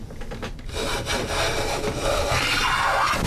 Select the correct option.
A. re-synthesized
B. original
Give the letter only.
B